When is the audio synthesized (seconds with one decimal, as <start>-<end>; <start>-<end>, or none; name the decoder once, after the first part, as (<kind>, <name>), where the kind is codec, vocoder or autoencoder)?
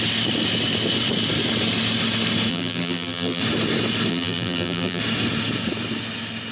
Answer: 2.5-3.4 (vocoder, BigVGAN v2); 4.1-5.0